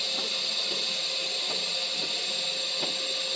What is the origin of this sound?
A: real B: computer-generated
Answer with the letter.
A